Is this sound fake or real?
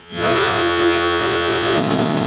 fake